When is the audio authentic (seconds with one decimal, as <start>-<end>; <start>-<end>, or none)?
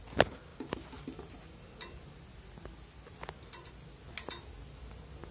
0.0-5.3